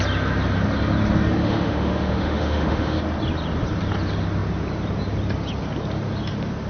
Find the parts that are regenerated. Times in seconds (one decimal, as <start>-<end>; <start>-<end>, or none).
1.4-3.0